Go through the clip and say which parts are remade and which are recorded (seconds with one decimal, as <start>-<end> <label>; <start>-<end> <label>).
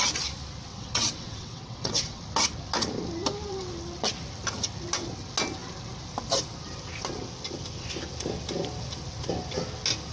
0.0-0.7 recorded; 0.7-2.2 remade; 2.2-10.1 recorded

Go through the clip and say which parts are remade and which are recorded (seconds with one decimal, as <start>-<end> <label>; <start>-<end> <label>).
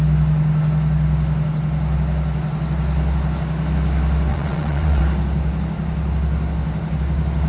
0.0-4.3 recorded; 4.3-5.0 remade; 5.0-7.5 recorded